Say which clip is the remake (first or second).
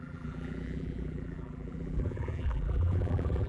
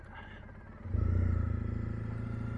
first